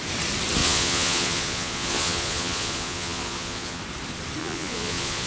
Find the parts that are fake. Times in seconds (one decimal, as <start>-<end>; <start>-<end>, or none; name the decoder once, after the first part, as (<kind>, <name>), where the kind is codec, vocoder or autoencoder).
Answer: 0.6-3.8 (vocoder, Vocos); 4.4-5.3